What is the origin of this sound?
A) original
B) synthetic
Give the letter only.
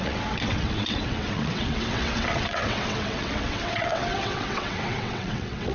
B